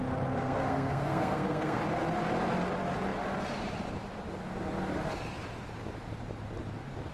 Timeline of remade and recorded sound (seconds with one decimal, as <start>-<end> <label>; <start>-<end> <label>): 0.0-0.4 recorded; 0.4-1.8 remade; 1.8-7.1 recorded